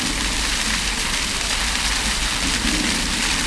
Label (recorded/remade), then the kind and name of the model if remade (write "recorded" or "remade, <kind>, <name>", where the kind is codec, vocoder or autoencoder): recorded